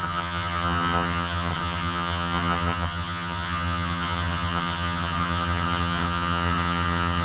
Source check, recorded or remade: remade